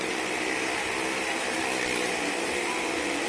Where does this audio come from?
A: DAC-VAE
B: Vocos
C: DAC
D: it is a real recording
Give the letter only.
D